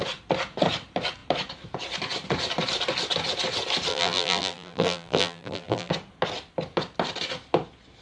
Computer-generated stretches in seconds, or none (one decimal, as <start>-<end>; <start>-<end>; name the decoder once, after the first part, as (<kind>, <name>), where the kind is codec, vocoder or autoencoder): 3.9-5.9 (vocoder, BigVGAN v2)